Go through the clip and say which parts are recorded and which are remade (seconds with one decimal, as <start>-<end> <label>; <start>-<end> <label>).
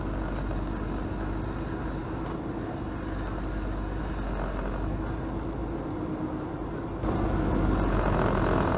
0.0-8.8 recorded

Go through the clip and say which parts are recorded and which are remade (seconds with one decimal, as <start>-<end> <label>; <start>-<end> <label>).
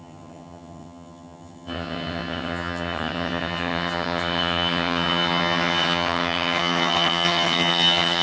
0.0-8.2 remade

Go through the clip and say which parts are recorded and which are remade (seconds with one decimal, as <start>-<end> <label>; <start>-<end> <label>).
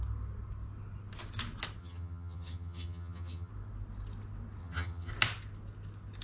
0.0-1.8 recorded; 1.8-3.5 remade; 3.5-4.6 recorded; 4.6-5.1 remade; 5.1-6.2 recorded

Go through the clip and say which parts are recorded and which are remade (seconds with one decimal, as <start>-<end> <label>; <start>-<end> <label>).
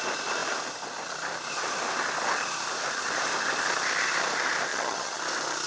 0.0-4.7 recorded; 4.7-5.2 remade; 5.2-5.7 recorded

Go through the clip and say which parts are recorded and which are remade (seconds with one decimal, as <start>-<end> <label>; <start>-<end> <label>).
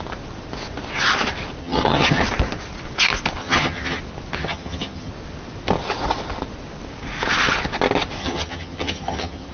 0.0-1.6 recorded; 1.6-2.2 remade; 2.2-3.4 recorded; 3.4-4.0 remade; 4.0-4.4 recorded; 4.4-5.1 remade; 5.1-8.2 recorded; 8.2-9.5 remade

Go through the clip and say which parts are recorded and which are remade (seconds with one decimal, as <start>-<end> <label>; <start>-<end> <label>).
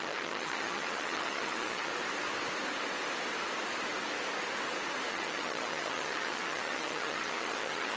0.0-1.9 remade; 1.9-5.1 recorded; 5.1-8.0 remade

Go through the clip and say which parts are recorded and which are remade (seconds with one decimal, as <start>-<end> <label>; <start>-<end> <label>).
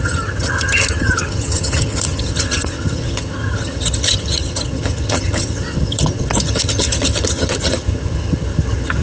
0.0-9.0 remade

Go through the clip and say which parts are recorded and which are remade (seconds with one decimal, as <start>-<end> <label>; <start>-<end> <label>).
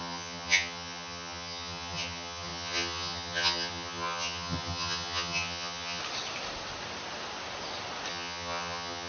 0.0-6.0 remade; 6.0-8.1 recorded; 8.1-9.1 remade